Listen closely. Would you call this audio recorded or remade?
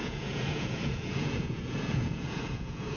remade